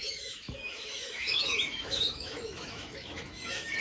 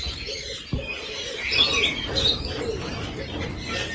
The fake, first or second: first